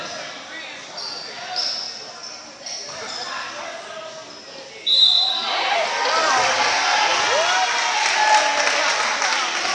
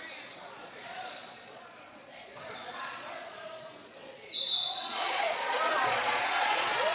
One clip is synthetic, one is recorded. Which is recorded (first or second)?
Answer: first